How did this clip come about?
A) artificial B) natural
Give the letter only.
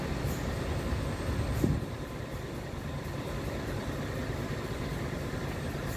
B